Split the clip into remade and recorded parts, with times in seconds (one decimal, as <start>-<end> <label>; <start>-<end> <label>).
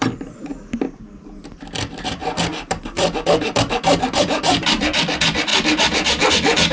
0.0-0.5 remade; 0.5-1.4 recorded; 1.4-2.2 remade; 2.2-4.0 recorded; 4.0-6.7 remade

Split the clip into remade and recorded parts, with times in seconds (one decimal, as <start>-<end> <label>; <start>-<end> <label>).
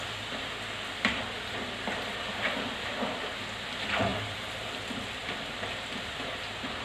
0.0-4.1 recorded; 4.1-6.0 remade; 6.0-6.8 recorded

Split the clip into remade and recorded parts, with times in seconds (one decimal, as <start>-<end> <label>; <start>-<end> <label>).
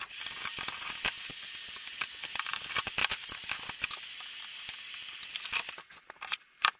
0.0-6.8 recorded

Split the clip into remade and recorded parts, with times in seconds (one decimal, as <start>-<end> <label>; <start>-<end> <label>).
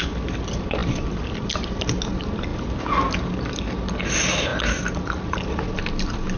0.0-0.8 recorded; 0.8-2.0 remade; 2.0-6.4 recorded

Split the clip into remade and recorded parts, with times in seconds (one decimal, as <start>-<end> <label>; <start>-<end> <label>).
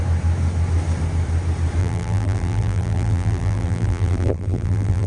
0.0-1.8 recorded; 1.8-5.1 remade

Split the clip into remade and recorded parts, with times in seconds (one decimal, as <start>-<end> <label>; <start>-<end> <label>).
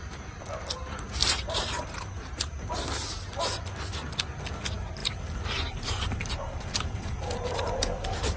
0.0-1.2 recorded; 1.2-2.7 remade; 2.7-5.0 recorded; 5.0-8.4 remade